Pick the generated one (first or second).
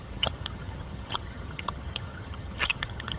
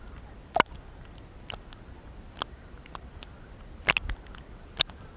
first